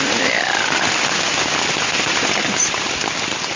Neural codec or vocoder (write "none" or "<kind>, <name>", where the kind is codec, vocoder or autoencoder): vocoder, BigVGAN v2